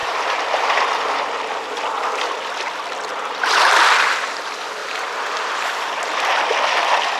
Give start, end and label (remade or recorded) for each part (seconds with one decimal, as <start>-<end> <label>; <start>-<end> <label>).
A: 0.0-0.8 remade; 0.8-3.1 recorded; 3.1-3.7 remade; 3.7-4.8 recorded; 4.8-5.9 remade; 5.9-7.2 recorded